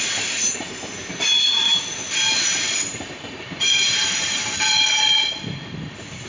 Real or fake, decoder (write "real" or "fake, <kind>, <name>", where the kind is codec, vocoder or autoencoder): fake, vocoder, BigVGAN v2